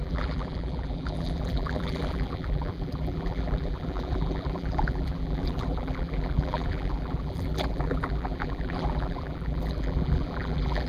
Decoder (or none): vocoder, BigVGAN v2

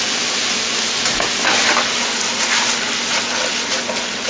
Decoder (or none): none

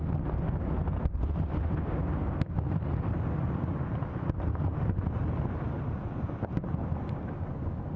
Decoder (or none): none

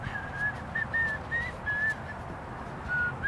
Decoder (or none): none